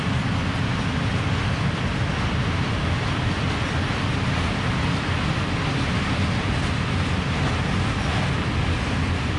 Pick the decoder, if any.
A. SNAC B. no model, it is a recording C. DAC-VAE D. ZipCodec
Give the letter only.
B